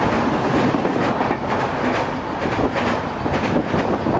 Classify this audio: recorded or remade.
recorded